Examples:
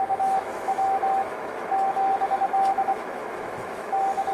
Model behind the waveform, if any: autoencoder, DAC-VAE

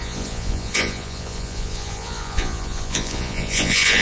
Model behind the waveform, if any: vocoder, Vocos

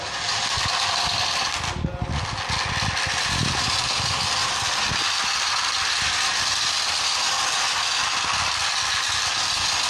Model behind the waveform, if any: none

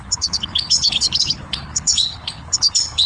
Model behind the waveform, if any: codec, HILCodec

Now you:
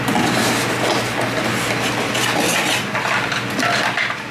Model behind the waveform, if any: none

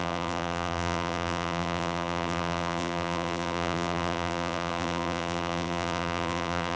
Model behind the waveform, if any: vocoder, BigVGAN v2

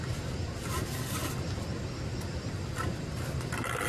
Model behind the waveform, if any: none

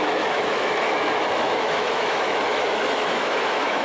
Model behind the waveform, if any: autoencoder, DAC-VAE